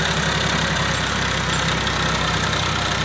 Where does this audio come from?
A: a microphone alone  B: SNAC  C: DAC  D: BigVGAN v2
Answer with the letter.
A